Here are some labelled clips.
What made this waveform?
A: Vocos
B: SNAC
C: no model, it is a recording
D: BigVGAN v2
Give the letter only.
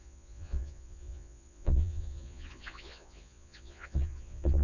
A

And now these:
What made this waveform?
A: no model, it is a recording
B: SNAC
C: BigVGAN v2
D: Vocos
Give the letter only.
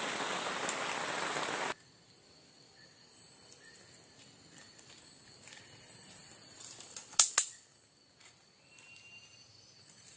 A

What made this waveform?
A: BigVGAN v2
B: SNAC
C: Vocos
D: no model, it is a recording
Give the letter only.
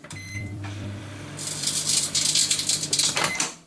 A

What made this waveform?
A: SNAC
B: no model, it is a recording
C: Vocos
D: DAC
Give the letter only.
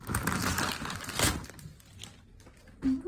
B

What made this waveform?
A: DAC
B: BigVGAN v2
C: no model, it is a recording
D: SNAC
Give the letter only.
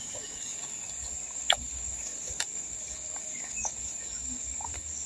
A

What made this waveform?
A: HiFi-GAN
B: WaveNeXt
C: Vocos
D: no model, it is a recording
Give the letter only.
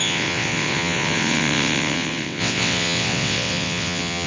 B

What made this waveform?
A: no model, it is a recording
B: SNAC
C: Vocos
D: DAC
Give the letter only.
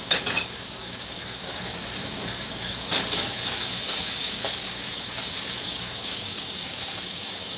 D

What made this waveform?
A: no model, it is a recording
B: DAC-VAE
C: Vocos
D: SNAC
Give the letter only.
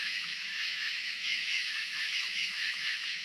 B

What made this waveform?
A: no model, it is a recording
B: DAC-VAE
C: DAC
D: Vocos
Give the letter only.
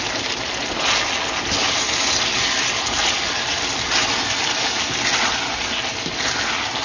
A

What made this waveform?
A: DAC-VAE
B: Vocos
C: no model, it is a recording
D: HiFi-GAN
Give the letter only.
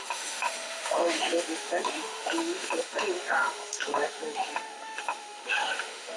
A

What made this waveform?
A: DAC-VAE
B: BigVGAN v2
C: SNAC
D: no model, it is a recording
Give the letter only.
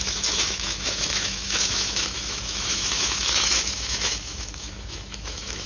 A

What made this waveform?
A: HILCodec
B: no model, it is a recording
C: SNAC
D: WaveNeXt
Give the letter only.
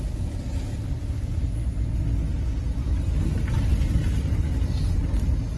B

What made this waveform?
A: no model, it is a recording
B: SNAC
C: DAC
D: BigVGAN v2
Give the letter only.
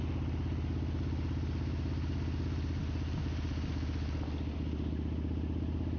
A